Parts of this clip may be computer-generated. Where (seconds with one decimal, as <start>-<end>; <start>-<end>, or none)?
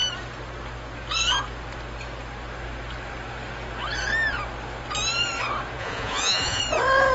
5.8-6.6